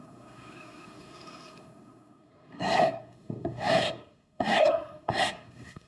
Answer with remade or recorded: remade